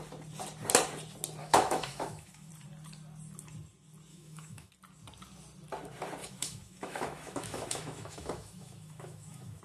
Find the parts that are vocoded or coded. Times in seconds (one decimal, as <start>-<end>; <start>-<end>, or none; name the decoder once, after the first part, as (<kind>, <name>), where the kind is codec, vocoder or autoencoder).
1.4-2.5 (autoencoder, DAC-VAE); 4.1-4.7; 6.2-9.6